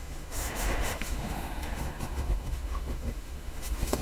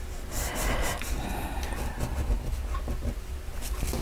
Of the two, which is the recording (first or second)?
second